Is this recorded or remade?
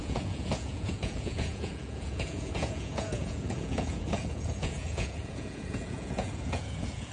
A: remade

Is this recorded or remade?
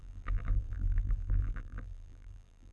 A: remade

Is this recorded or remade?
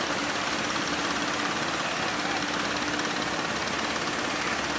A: recorded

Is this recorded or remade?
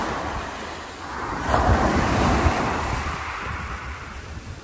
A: recorded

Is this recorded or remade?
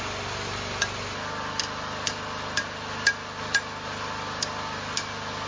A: recorded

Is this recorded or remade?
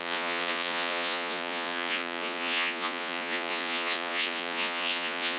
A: remade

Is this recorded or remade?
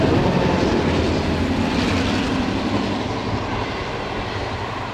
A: recorded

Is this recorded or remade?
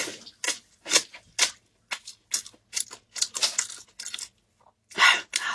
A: recorded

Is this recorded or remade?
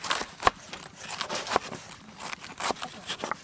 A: recorded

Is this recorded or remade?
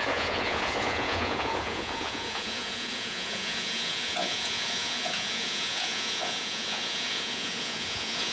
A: remade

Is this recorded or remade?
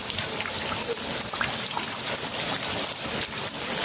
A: recorded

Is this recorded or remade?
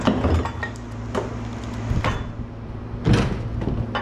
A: recorded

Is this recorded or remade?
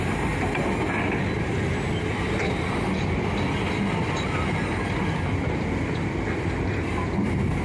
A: recorded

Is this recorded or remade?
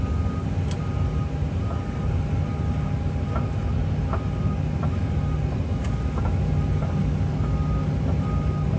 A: recorded